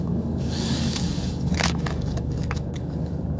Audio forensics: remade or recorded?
remade